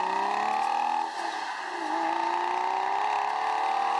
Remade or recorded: recorded